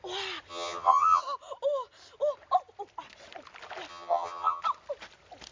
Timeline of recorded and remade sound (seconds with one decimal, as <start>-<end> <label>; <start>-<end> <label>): 0.0-0.5 recorded; 0.5-1.2 remade; 1.2-3.9 recorded; 3.9-4.6 remade; 4.6-5.5 recorded